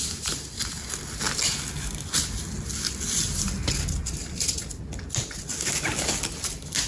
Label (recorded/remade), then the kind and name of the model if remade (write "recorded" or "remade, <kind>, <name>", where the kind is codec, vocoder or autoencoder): recorded